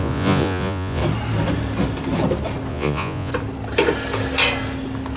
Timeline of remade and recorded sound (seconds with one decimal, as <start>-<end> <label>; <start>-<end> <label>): 0.0-1.0 remade; 1.0-2.7 recorded; 2.7-3.3 remade; 3.3-5.2 recorded